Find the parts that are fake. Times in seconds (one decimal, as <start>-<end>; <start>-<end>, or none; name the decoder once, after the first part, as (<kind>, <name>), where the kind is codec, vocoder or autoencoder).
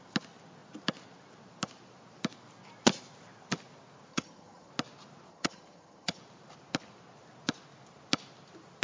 4.1-4.7 (vocoder, HiFi-GAN); 5.3-6.2